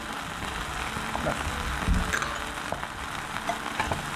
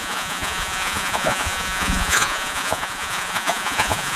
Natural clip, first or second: first